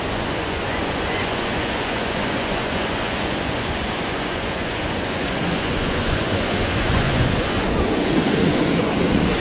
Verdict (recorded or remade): remade